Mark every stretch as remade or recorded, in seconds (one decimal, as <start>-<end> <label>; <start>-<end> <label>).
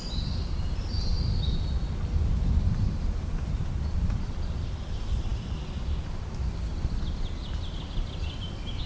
0.0-8.9 recorded